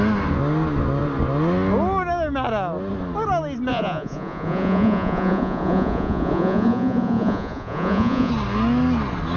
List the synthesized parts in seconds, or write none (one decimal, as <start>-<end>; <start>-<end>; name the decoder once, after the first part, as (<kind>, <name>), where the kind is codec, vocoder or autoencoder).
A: 3.7-8.3 (vocoder, Vocos)